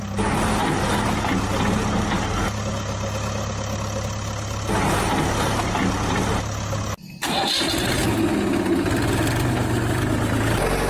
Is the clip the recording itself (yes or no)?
yes